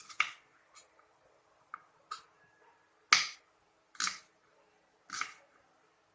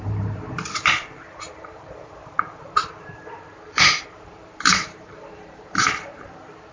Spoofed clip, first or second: second